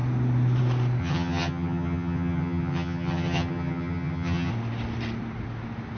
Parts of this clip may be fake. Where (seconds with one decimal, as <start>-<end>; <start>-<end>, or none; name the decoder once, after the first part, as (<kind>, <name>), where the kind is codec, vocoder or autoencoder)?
1.0-4.5 (vocoder, HiFi-GAN)